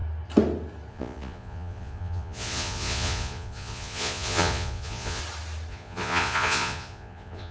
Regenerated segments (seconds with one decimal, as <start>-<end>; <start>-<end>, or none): 0.9-5.2; 5.7-7.5